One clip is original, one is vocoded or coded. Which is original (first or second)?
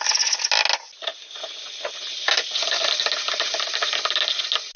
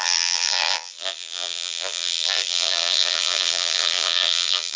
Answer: first